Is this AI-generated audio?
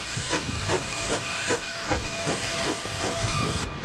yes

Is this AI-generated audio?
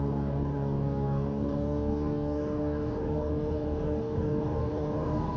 yes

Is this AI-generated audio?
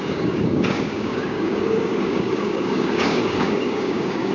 yes